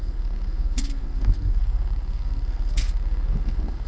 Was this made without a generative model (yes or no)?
no